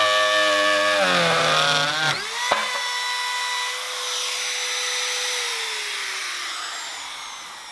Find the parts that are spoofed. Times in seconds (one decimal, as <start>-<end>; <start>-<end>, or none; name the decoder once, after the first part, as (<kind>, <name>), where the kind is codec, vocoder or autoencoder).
none